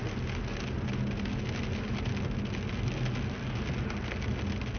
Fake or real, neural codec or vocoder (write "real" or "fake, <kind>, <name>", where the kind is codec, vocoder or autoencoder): real